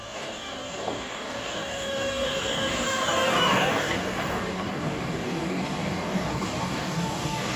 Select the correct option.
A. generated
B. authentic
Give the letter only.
A